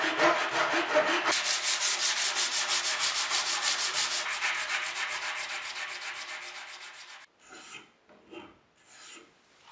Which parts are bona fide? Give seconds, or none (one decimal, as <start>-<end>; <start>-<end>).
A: 0.0-2.5; 5.5-9.7